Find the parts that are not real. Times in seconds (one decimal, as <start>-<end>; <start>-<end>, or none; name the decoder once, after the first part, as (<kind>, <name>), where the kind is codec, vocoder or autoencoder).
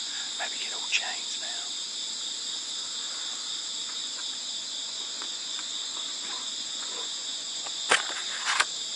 0.0-0.6 (vocoder, Vocos); 3.8-8.2